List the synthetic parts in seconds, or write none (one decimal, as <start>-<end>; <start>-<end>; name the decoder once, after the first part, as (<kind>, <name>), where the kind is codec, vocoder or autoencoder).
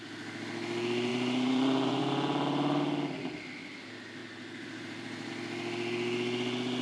1.1-2.0 (vocoder, BigVGAN v2); 4.2-5.3